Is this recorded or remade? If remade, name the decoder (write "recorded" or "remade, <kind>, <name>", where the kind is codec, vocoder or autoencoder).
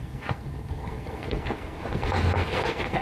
remade, codec, SNAC